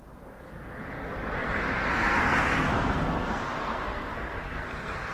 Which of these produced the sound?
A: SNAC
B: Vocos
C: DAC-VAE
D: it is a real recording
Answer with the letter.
A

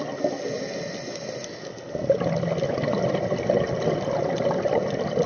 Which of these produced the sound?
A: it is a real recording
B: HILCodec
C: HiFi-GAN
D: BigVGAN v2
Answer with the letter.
A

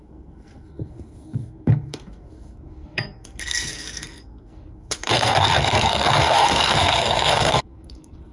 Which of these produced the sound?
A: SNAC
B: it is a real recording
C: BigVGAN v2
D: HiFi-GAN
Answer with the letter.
A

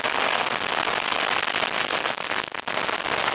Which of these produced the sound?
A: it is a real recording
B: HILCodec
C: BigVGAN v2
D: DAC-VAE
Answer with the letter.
A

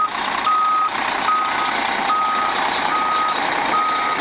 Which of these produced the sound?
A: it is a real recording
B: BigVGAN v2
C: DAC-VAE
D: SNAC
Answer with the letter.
A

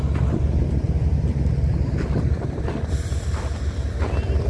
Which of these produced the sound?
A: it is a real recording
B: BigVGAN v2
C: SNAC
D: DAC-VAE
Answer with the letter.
A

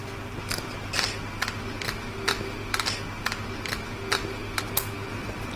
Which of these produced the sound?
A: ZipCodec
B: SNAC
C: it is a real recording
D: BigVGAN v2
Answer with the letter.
C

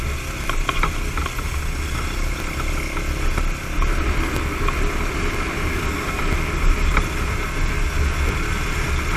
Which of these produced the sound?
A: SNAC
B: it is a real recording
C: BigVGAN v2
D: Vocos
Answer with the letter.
B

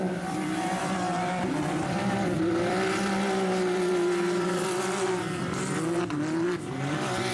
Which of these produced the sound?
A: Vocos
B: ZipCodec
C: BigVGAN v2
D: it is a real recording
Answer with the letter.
C